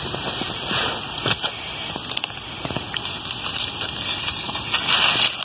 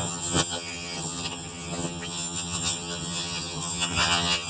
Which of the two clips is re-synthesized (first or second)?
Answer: second